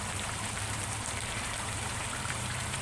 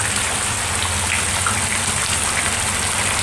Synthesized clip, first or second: first